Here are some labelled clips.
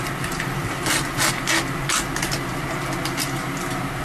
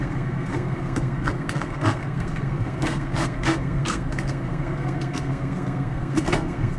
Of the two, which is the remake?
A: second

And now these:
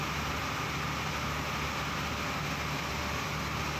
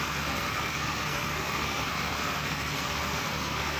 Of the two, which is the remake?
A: second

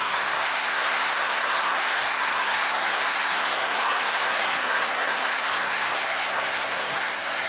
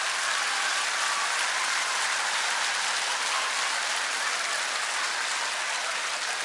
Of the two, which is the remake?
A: first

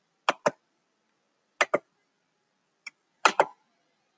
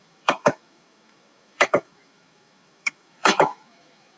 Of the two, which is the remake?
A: second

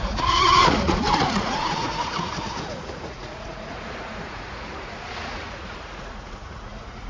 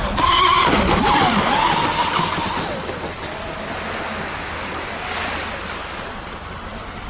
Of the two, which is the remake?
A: first